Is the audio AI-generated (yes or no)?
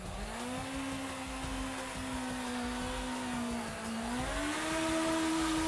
no